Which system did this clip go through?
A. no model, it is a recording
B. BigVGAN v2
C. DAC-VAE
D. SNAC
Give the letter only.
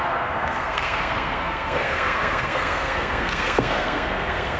D